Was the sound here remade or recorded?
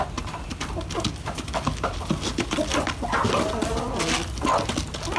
recorded